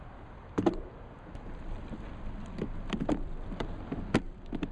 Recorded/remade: remade